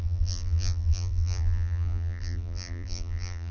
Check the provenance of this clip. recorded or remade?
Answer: remade